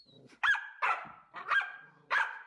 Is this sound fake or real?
real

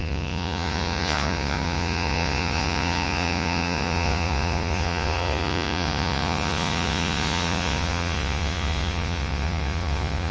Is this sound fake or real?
fake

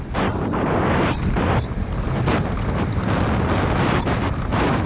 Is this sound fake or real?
real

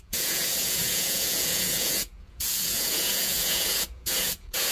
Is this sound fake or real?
fake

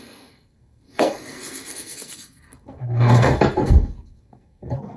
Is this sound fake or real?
fake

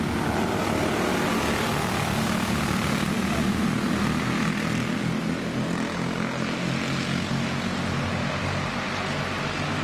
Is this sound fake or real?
real